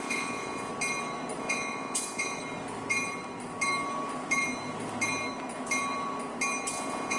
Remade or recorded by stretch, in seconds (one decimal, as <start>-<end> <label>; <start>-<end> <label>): 0.0-0.7 remade; 0.7-1.4 recorded; 1.4-2.4 remade; 2.4-6.7 recorded; 6.7-7.2 remade